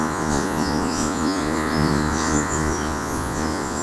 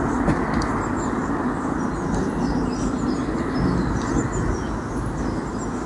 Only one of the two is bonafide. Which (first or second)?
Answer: second